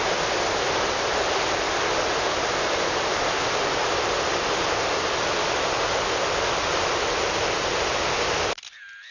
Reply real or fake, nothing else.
real